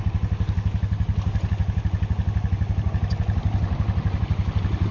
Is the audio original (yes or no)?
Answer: yes